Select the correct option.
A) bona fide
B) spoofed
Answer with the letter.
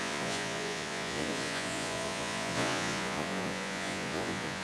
B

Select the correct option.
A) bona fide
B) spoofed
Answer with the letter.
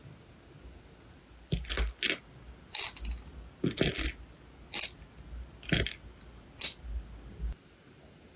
A